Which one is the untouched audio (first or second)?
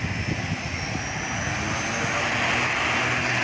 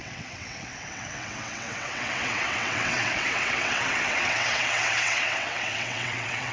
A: first